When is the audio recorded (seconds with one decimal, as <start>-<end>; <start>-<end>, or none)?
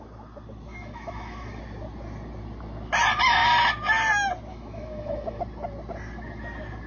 0.0-0.7; 1.6-4.5; 5.4-6.9